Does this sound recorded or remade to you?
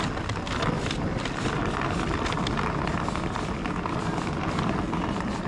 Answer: recorded